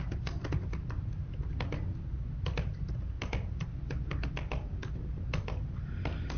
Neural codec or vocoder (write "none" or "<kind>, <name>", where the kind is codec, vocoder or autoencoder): none